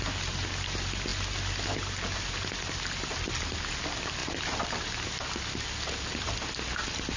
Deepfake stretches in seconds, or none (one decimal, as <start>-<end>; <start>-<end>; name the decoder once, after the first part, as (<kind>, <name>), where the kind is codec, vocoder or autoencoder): none